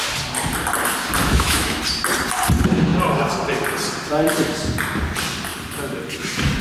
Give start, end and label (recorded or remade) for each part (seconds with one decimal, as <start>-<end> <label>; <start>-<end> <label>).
0.0-1.2 recorded; 1.2-1.8 remade; 1.8-6.6 recorded